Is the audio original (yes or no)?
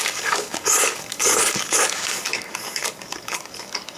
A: no